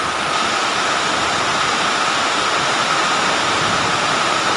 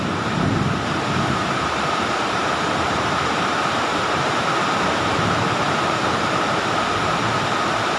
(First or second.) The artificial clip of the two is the second